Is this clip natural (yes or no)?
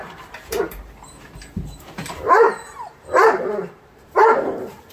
no